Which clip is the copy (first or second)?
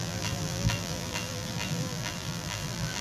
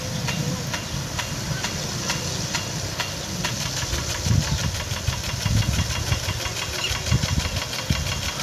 first